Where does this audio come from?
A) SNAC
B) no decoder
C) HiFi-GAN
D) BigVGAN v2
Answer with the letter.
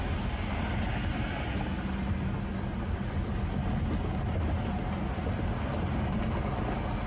B